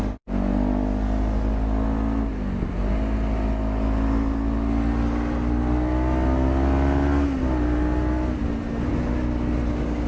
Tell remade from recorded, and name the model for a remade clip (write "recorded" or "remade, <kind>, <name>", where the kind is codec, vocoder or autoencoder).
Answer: recorded